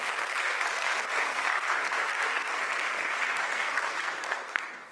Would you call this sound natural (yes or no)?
no